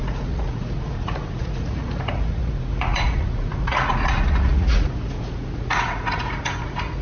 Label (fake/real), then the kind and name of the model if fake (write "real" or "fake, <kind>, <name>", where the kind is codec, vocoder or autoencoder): fake, vocoder, Vocos